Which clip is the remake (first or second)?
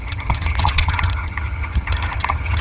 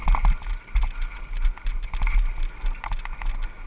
first